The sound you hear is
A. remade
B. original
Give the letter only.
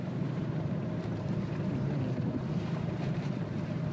A